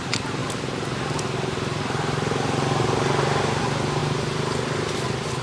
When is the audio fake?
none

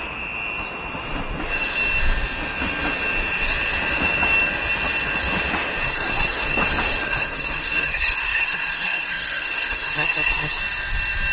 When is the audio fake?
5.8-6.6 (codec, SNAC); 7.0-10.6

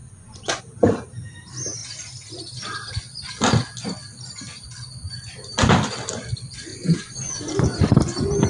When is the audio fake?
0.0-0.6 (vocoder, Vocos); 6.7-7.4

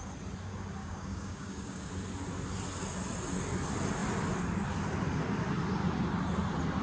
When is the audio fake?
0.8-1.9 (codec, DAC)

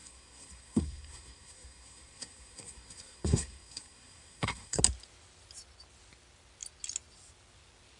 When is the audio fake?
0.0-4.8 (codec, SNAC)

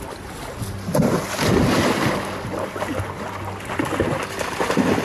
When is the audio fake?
none

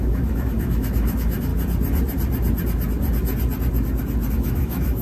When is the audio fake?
0.0-1.5 (autoencoder, DAC-VAE); 4.3-5.0

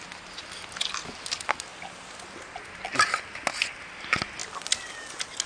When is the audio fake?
none